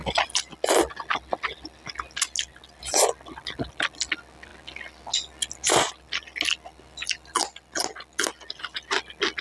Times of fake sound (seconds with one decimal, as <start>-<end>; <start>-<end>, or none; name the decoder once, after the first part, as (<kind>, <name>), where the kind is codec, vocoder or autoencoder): none